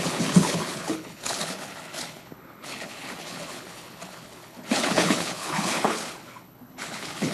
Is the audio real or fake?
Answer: fake